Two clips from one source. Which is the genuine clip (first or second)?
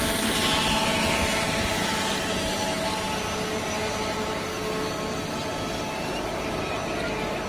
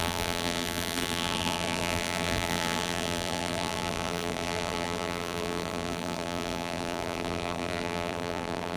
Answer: first